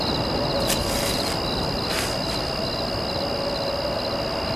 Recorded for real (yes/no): yes